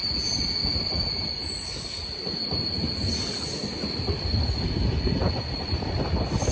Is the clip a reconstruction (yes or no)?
no